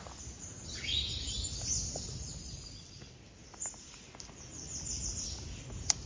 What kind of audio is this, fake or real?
real